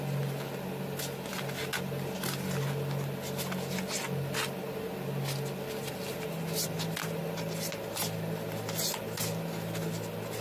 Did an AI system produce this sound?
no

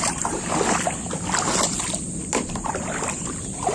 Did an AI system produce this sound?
yes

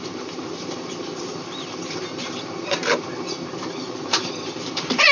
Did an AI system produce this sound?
yes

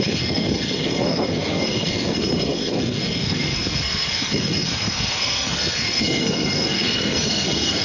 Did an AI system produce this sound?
yes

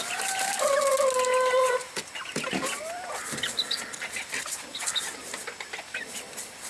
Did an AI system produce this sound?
no